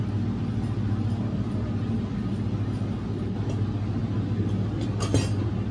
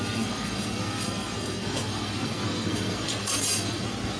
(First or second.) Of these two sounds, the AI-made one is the second